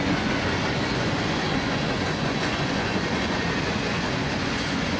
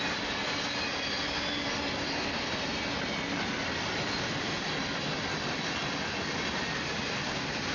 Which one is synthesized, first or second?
first